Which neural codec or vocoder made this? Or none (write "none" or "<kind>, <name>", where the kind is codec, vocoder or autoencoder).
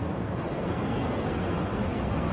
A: codec, SNAC